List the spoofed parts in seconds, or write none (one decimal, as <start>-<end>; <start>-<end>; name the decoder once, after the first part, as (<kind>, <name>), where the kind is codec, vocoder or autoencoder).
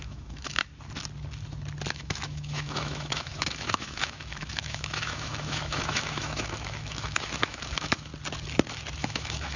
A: 0.0-0.7 (autoencoder, DAC-VAE); 1.9-8.1; 9.0-9.6